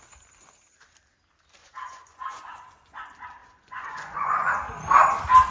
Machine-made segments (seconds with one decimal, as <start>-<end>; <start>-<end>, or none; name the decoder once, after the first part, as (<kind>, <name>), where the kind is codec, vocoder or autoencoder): 1.6-3.0 (vocoder, Vocos); 3.4-4.5